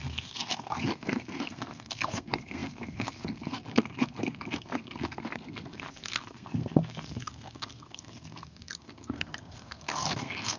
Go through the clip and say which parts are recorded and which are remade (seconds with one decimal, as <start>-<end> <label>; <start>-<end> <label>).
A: 0.0-10.6 remade